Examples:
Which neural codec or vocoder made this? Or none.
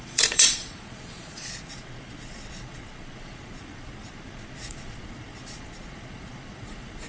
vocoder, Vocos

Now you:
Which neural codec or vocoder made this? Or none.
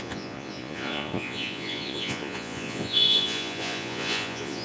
vocoder, Vocos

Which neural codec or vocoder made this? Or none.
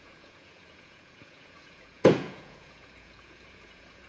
vocoder, Vocos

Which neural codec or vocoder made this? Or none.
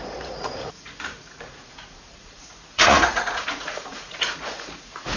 vocoder, Vocos